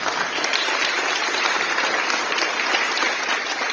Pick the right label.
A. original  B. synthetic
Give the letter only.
A